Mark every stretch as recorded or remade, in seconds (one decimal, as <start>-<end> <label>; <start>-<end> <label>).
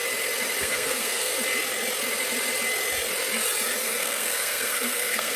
0.0-0.6 recorded; 0.6-1.3 remade; 1.3-3.8 recorded; 3.8-5.4 remade